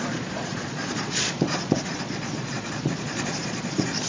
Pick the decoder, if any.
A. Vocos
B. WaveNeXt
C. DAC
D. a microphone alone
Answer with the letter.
A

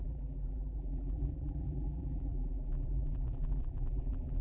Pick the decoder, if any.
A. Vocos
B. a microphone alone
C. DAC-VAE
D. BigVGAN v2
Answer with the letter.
D